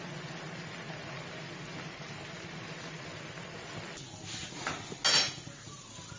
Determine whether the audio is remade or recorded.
recorded